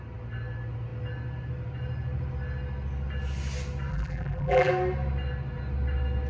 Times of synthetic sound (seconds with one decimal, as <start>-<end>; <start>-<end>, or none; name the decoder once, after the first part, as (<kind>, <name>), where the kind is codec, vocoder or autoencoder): 3.9-4.7 (vocoder, BigVGAN v2)

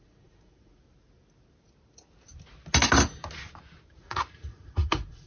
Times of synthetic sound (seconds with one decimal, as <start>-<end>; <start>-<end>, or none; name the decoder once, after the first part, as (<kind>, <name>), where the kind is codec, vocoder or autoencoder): 0.0-0.8 (vocoder, Vocos); 4.0-5.3

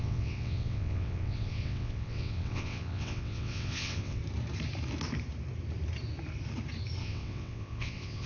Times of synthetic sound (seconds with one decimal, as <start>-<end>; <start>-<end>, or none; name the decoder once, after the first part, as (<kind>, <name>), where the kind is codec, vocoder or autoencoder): 0.0-4.2 (vocoder, WaveNeXt); 7.0-8.3

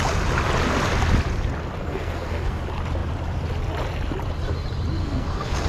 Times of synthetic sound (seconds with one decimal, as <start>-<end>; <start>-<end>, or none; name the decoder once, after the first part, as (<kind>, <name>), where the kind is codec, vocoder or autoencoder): 1.8-2.6 (codec, SNAC); 5.0-5.7